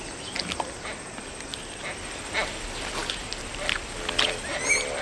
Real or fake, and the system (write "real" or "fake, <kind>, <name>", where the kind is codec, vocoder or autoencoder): real